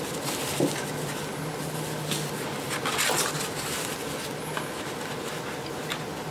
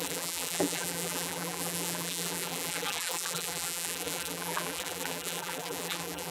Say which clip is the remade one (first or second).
second